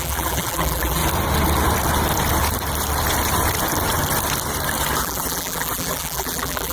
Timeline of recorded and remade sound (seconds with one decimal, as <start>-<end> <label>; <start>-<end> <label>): 0.0-1.0 remade; 1.0-5.0 recorded; 5.0-6.7 remade